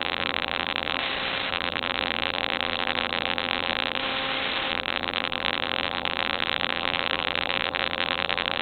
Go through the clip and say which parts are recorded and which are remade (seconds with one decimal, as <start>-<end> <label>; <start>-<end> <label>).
0.0-1.0 remade; 1.0-1.5 recorded; 1.5-4.0 remade; 4.0-4.7 recorded; 4.7-8.6 remade